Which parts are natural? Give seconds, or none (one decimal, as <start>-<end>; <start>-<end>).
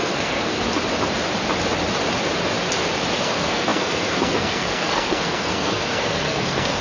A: 0.5-3.2